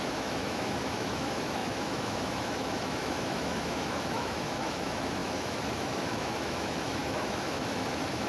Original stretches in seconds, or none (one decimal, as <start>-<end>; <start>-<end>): none